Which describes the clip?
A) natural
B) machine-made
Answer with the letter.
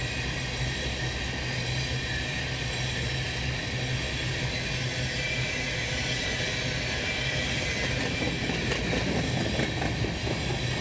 A